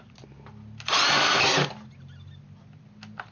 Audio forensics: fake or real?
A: real